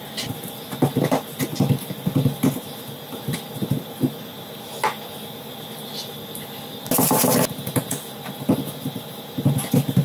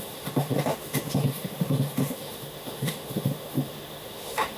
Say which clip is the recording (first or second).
first